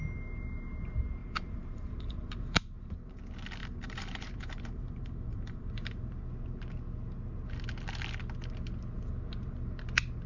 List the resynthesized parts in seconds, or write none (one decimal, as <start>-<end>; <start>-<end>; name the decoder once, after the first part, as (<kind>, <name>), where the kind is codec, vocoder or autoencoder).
1.2-3.2 (vocoder, BigVGAN v2); 3.6-6.2